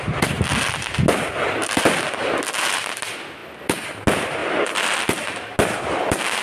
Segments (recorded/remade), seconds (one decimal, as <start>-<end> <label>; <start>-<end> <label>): 0.0-6.4 recorded